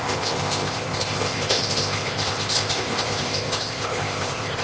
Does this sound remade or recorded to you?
remade